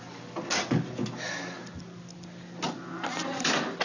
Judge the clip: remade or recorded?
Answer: recorded